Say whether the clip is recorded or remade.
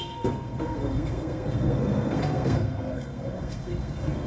remade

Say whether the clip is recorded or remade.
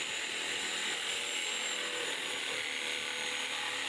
recorded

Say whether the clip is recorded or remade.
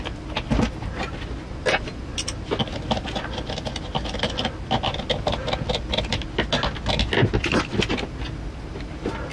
recorded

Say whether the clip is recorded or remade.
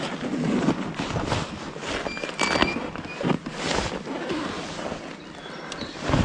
recorded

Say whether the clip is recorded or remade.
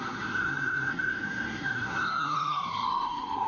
remade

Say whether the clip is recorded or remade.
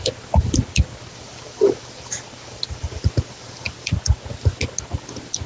recorded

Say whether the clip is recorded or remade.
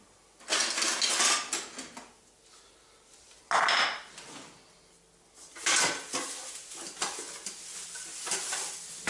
recorded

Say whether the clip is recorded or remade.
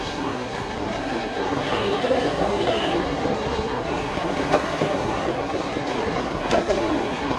remade